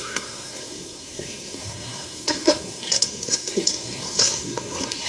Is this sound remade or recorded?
remade